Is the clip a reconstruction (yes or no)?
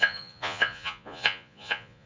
yes